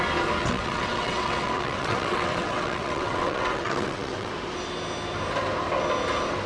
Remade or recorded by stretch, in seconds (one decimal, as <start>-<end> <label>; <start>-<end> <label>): 0.0-0.4 recorded; 0.4-4.3 remade; 4.3-6.5 recorded